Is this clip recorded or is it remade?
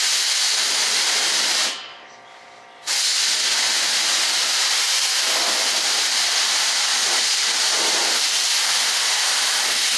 recorded